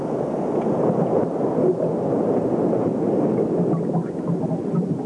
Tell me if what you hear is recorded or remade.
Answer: recorded